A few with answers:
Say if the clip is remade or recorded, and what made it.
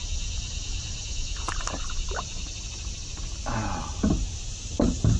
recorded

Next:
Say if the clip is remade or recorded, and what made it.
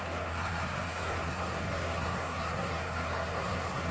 remade, codec, SNAC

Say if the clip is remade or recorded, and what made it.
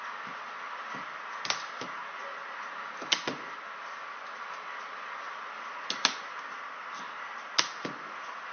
recorded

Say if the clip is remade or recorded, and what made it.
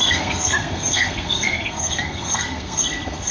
remade, codec, SNAC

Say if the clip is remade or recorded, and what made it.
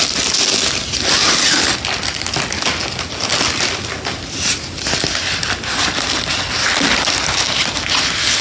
recorded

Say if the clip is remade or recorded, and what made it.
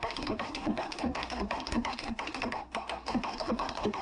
remade, codec, SNAC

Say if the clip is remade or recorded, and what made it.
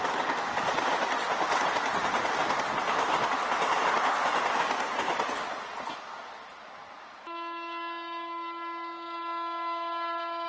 recorded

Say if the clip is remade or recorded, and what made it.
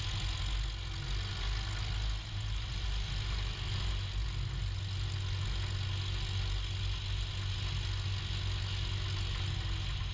recorded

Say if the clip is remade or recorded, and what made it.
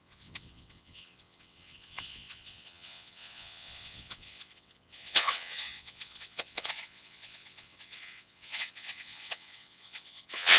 remade, vocoder, WaveNeXt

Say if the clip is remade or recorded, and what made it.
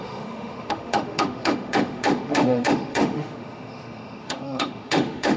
remade, autoencoder, DAC-VAE